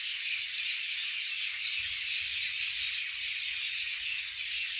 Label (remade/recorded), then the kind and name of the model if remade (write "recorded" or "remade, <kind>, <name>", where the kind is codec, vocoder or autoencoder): recorded